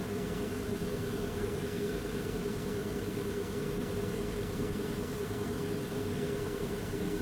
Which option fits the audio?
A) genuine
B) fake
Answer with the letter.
B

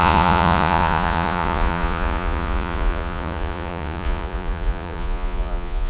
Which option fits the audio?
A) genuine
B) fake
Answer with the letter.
B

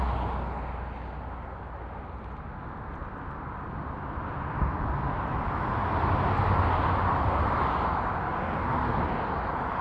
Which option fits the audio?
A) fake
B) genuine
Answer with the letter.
B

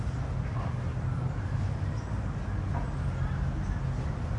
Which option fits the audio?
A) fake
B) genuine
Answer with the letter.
B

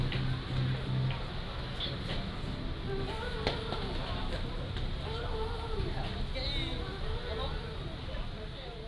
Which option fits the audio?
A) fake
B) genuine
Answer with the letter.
B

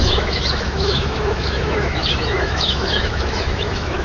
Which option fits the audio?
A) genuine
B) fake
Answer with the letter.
B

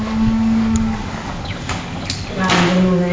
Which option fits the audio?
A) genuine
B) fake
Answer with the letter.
B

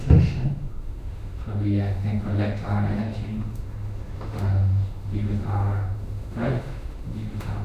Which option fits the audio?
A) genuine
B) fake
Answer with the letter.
B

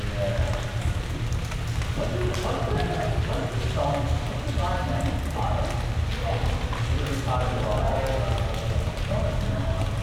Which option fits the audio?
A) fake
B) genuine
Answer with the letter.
B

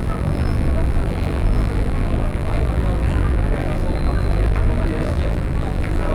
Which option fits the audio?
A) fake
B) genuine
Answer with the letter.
A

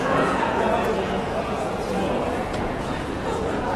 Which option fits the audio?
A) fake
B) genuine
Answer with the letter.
A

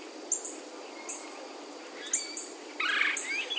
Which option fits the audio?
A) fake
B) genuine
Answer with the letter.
B